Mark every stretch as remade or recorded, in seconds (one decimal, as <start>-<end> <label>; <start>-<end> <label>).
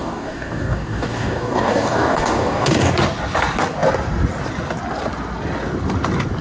0.0-2.9 remade; 2.9-6.4 recorded